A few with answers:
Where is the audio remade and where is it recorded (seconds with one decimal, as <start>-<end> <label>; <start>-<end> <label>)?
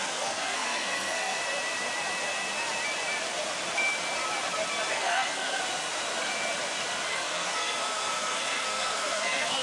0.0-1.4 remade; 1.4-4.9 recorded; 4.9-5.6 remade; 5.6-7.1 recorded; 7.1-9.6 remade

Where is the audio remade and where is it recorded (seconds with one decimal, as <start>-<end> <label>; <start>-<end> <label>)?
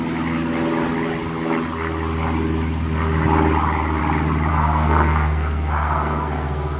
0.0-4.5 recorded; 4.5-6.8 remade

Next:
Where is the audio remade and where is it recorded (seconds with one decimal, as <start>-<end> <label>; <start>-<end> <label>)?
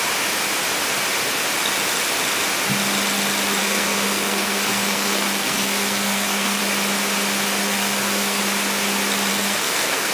0.0-3.6 recorded; 3.6-6.6 remade; 6.6-7.6 recorded; 7.6-8.4 remade; 8.4-9.3 recorded; 9.3-10.1 remade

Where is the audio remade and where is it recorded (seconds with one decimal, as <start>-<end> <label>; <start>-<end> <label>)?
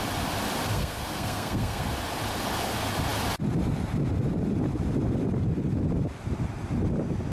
0.0-0.7 recorded; 0.7-1.9 remade; 1.9-7.3 recorded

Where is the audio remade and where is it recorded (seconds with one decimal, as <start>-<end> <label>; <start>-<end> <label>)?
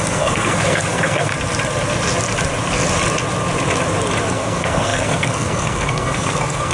0.0-1.3 remade; 1.3-4.3 recorded; 4.3-6.7 remade